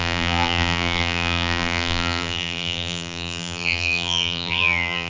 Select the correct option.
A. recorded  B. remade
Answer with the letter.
B